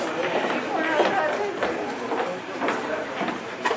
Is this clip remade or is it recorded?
recorded